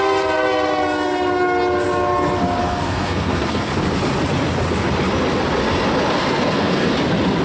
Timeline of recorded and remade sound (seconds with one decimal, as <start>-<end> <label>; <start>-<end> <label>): 0.0-2.6 recorded; 2.6-3.7 remade; 3.7-6.2 recorded; 6.2-6.9 remade; 6.9-7.4 recorded